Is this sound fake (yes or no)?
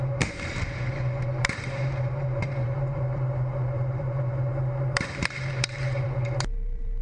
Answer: yes